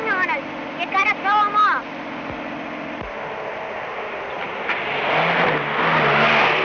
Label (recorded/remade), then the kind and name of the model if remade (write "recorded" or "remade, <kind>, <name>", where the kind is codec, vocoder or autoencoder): recorded